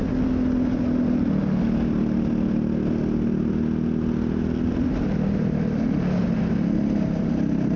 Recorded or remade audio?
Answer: recorded